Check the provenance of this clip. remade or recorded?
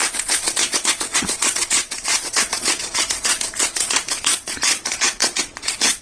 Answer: remade